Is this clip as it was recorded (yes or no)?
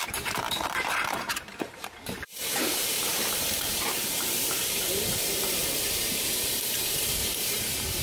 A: no